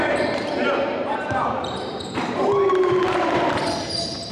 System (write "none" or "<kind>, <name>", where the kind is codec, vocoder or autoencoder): vocoder, BigVGAN v2